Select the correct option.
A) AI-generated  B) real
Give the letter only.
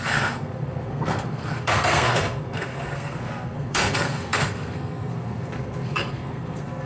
A